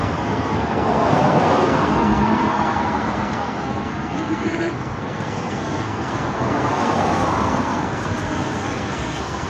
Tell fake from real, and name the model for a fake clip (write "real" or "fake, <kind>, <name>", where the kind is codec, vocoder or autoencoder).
fake, codec, SNAC